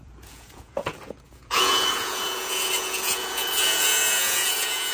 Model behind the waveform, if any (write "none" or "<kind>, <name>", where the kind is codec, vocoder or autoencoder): vocoder, Vocos